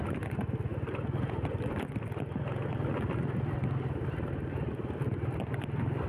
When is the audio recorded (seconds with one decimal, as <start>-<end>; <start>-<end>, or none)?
0.0-6.1